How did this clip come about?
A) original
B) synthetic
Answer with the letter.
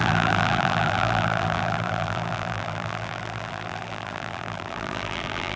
B